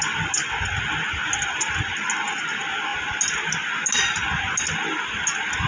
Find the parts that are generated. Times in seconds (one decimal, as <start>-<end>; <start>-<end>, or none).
none